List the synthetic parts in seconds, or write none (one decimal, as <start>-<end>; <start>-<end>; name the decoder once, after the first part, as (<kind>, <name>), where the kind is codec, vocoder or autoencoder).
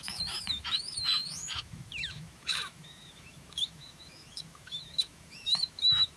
0.0-6.2 (autoencoder, DAC-VAE)